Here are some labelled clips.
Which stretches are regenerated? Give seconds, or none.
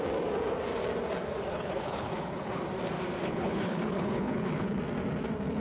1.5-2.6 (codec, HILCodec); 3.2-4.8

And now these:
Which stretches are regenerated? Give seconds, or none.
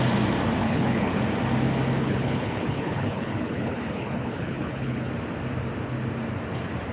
0.6-1.2 (codec, HILCodec); 2.0-5.1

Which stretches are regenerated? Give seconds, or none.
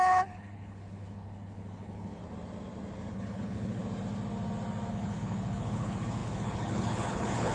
0.0-2.2 (codec, HILCodec); 3.1-3.8; 4.9-7.5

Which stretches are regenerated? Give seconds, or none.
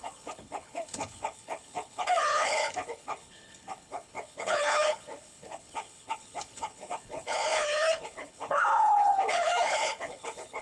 0.0-10.6 (codec, HILCodec)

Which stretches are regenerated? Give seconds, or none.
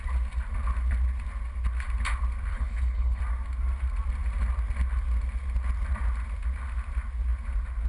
2.5-3.2 (codec, HILCodec)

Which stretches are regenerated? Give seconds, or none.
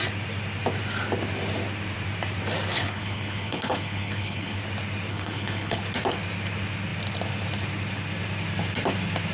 2.7-4.6 (codec, HILCodec); 5.1-5.8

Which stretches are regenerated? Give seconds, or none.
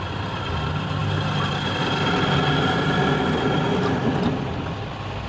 none